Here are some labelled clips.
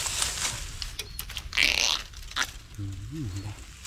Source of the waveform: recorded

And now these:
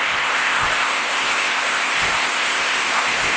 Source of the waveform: remade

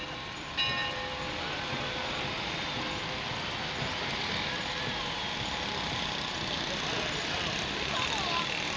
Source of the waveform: recorded